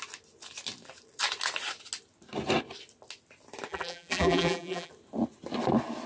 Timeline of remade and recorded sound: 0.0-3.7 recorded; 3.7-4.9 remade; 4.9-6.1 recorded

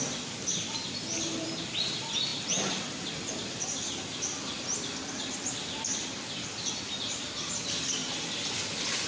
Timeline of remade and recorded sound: 0.0-9.1 recorded

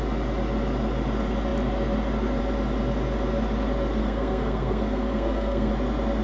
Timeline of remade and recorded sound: 0.0-4.0 recorded; 4.0-5.7 remade; 5.7-6.2 recorded